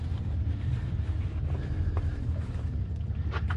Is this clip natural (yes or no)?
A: no